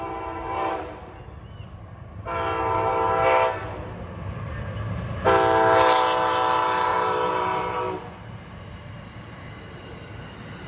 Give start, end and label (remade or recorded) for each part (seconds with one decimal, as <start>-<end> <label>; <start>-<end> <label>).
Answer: 0.0-6.9 recorded; 6.9-7.6 remade; 7.6-10.7 recorded